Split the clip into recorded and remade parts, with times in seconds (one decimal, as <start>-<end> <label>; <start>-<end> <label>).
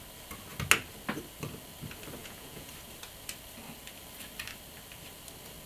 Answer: 0.0-2.2 recorded; 2.2-2.7 remade; 2.7-5.7 recorded